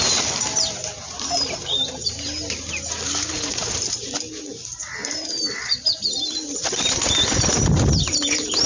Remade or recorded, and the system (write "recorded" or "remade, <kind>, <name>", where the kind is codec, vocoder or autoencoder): recorded